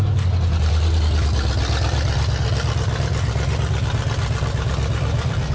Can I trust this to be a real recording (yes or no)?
yes